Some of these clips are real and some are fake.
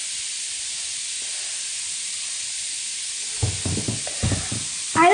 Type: real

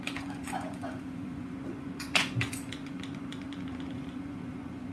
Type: fake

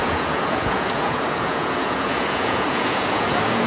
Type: fake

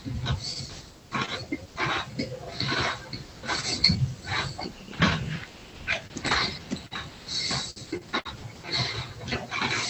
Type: real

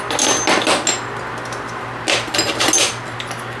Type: real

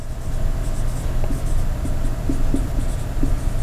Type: real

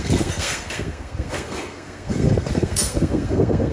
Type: fake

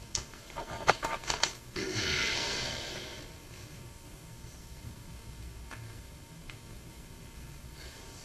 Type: fake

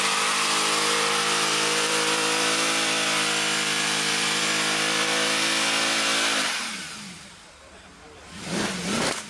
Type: fake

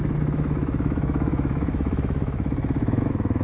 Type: fake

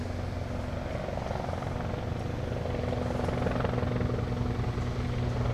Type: real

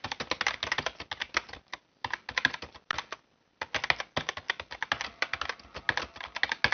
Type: real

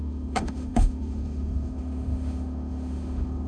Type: fake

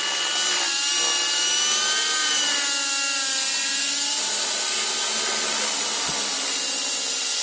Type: real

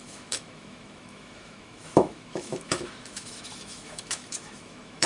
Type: fake